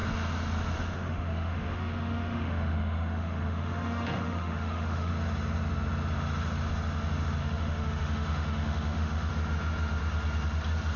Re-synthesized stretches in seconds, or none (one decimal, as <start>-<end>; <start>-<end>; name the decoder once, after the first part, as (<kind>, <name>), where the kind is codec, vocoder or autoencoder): 0.8-5.1 (autoencoder, DAC-VAE); 7.4-9.3